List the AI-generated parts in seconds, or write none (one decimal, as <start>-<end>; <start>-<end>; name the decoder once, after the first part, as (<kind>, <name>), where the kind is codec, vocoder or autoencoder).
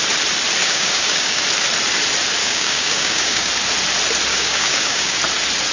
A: 0.6-1.4 (codec, DAC); 2.4-3.5; 4.3-5.2